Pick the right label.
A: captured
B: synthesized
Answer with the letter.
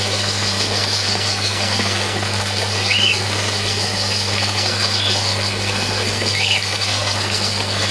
B